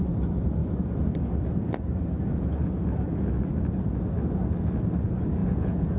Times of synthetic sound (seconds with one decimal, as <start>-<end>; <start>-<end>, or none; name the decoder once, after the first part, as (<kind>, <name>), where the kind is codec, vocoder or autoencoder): 5.4-6.0 (vocoder, Vocos)